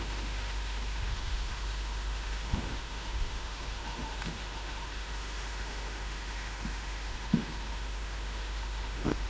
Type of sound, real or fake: fake